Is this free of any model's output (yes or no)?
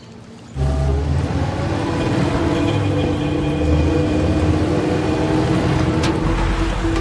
yes